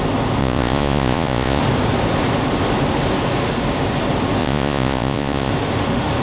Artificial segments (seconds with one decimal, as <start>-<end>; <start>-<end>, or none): 0.4-1.6; 4.4-5.5